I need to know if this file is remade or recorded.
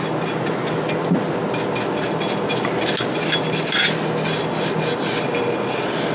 recorded